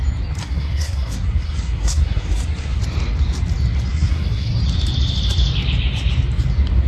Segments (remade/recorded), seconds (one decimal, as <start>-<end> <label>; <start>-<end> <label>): 0.0-0.4 recorded; 0.4-2.8 remade; 2.8-3.9 recorded; 3.9-4.6 remade; 4.6-6.9 recorded